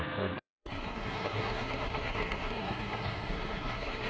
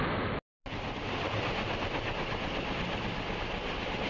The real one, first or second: second